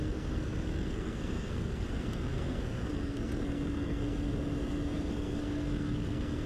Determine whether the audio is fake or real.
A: fake